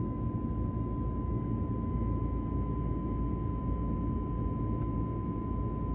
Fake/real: real